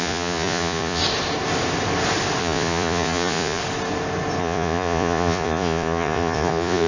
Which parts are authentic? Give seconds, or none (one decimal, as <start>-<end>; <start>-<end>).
1.0-2.4; 3.6-4.4